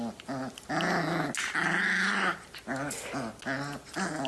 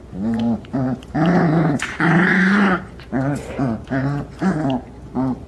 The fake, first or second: second